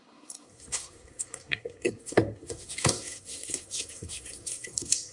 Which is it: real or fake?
fake